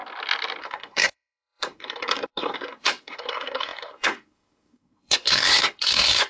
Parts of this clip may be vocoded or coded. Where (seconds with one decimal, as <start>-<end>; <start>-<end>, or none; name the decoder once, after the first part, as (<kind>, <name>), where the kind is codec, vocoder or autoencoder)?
0.6-6.3 (codec, SNAC)